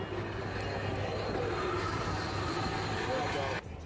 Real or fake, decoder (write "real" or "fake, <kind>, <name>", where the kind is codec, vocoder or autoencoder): real